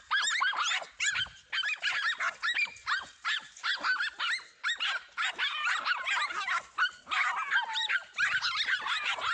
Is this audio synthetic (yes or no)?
no